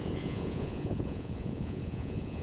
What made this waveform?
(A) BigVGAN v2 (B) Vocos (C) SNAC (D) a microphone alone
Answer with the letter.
B